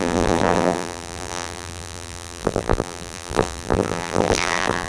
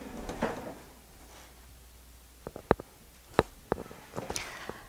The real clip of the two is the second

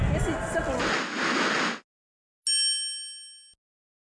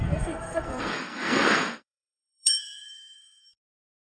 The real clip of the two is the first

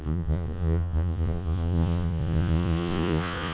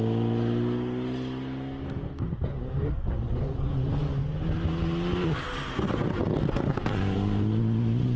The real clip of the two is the second